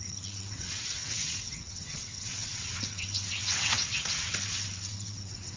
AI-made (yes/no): yes